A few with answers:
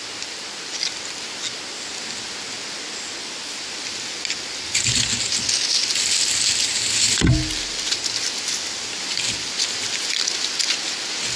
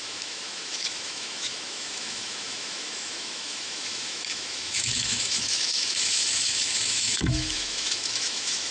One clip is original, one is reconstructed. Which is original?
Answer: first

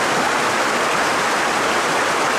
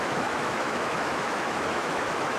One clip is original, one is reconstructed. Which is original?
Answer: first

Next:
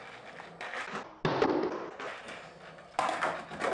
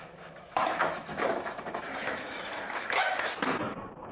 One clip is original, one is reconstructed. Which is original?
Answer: first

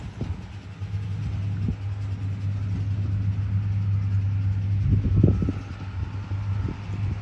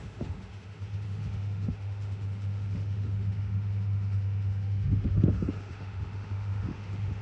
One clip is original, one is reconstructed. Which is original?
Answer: first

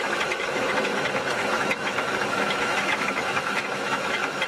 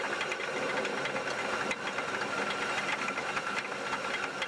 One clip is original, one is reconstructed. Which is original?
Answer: second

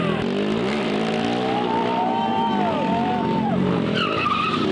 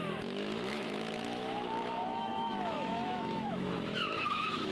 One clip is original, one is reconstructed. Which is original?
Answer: first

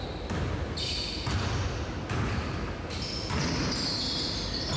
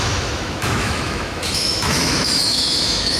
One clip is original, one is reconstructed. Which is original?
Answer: first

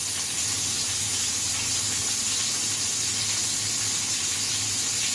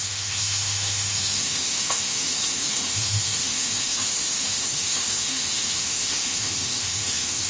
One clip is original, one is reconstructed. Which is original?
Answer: first